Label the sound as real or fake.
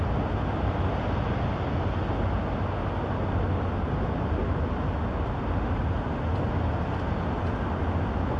real